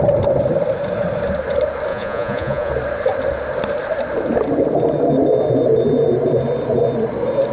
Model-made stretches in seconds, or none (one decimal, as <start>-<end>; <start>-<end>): 1.9-2.7